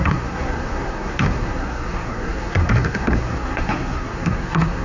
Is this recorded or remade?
remade